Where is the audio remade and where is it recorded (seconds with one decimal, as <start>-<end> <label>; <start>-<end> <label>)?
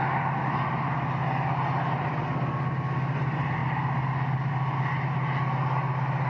0.0-6.3 recorded